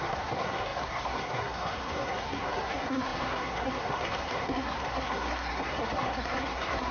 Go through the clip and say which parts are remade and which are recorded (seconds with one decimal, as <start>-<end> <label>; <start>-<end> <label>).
0.0-6.9 remade